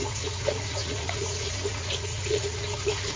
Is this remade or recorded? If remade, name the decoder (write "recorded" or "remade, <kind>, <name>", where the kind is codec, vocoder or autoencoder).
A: remade, vocoder, Vocos